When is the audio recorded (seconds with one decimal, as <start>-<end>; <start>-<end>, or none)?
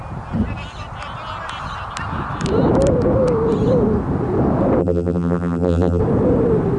0.0-4.8; 6.0-6.8